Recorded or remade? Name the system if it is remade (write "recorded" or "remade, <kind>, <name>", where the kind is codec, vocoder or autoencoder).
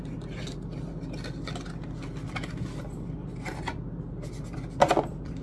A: recorded